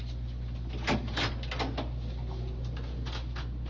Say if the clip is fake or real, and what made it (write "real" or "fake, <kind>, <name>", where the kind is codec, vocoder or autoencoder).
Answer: real